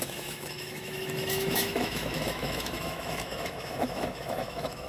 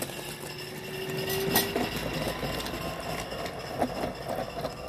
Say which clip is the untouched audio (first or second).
second